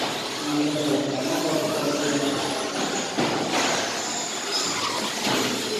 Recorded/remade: recorded